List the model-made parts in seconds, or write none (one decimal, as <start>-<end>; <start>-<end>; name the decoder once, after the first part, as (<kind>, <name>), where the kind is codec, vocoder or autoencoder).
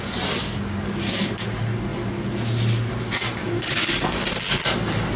0.4-1.3 (codec, DAC); 3.4-4.2